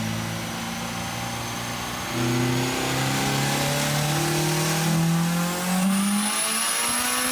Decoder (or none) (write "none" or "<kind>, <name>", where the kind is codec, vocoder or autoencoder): none